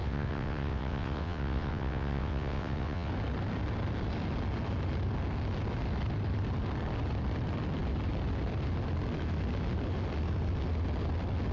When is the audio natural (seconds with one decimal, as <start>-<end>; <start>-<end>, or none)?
3.1-11.5